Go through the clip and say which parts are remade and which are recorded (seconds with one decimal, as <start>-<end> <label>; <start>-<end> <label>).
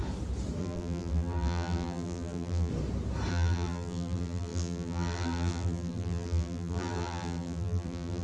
0.0-0.6 recorded; 0.6-2.7 remade; 2.7-3.3 recorded; 3.3-8.2 remade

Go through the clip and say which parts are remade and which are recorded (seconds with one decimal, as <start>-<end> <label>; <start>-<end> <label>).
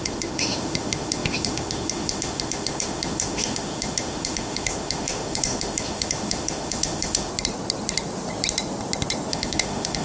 0.0-7.3 remade; 7.3-9.3 recorded; 9.3-10.0 remade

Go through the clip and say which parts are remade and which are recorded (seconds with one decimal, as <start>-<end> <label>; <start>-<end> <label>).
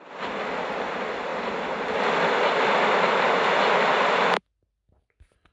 0.0-5.5 recorded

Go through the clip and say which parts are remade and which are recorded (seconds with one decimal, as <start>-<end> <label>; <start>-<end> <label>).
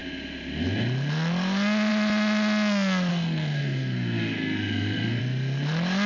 0.0-3.1 recorded; 3.1-5.2 remade; 5.2-6.1 recorded